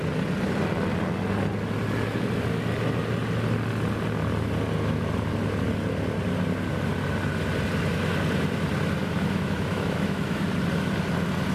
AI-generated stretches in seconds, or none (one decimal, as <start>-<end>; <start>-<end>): 9.0-10.4